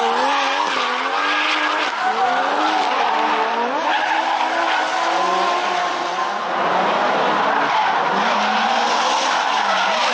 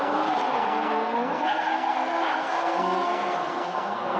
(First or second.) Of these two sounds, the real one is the first